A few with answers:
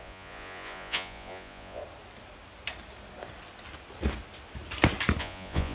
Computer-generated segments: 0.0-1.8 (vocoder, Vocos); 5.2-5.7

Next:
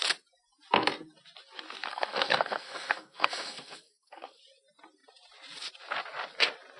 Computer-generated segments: 1.9-4.4 (codec, SNAC)

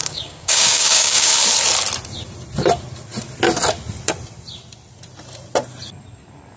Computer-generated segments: 0.0-1.3 (codec, DAC)

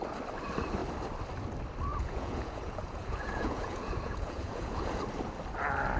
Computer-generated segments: 1.9-5.0 (vocoder, Vocos)

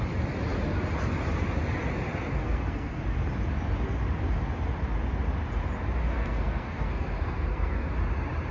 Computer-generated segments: 2.4-3.0 (codec, SNAC); 6.0-7.9